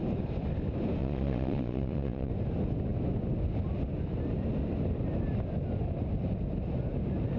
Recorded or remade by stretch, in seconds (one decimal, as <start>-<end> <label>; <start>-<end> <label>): 0.0-1.0 recorded; 1.0-2.3 remade; 2.3-7.4 recorded